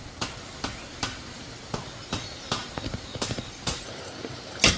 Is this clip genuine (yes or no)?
yes